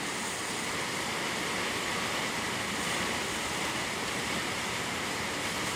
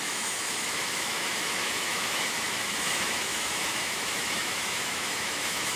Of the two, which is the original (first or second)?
first